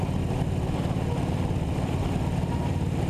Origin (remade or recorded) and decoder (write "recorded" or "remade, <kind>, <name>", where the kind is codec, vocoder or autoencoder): recorded